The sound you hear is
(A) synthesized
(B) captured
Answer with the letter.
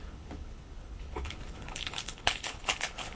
A